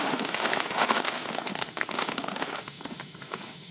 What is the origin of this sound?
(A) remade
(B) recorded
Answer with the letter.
A